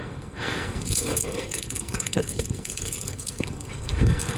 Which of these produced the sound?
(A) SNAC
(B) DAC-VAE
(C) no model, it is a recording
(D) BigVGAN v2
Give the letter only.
A